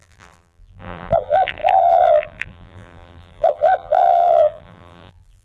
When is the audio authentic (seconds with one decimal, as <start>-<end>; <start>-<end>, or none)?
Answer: none